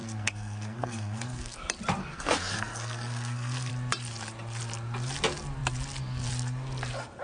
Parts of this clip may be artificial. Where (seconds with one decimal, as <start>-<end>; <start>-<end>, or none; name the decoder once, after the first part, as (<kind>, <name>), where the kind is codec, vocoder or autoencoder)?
0.0-1.6 (codec, SNAC); 2.0-3.7